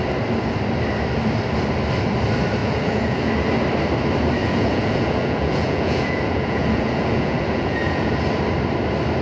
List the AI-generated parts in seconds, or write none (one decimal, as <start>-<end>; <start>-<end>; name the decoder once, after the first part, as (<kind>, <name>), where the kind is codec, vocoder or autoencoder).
2.6-3.3 (vocoder, Vocos); 4.4-8.1